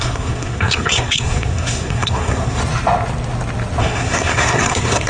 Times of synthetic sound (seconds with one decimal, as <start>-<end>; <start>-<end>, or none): 0.0-2.6; 3.8-5.1